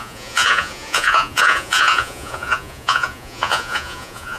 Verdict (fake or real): fake